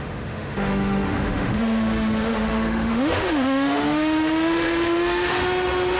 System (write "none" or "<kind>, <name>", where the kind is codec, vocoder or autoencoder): autoencoder, DAC-VAE